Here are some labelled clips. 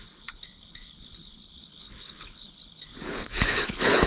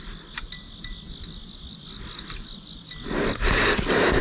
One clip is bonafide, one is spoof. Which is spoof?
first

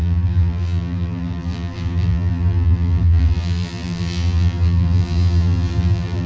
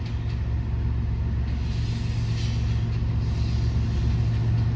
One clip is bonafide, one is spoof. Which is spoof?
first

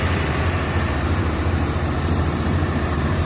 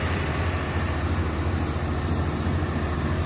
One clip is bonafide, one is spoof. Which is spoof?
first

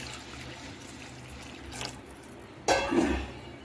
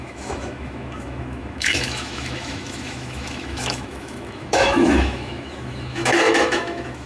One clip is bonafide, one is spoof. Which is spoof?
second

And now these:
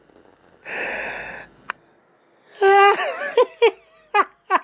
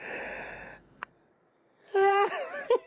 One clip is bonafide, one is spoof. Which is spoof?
second